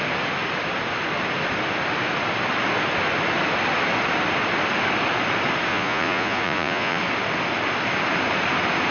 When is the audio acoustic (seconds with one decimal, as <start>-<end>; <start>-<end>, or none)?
0.0-5.7; 7.0-8.9